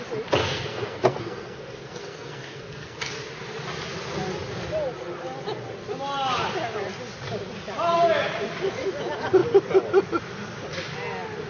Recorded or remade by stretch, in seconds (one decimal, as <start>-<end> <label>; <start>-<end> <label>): 0.0-0.4 recorded; 0.4-3.1 remade; 3.1-11.5 recorded